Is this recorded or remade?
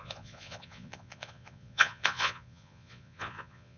remade